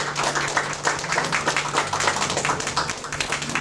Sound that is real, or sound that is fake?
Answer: real